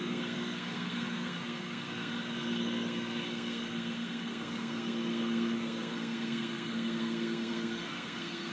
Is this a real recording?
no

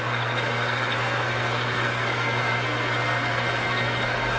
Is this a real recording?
no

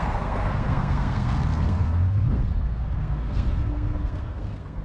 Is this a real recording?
no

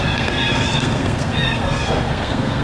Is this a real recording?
no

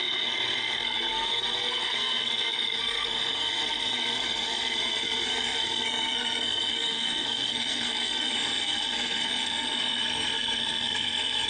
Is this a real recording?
no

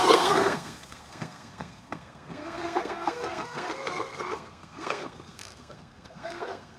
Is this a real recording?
no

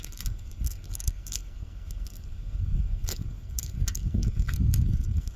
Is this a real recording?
no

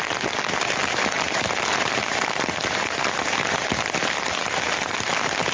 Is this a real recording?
yes